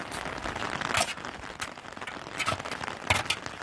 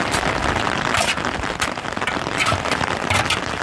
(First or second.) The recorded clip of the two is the first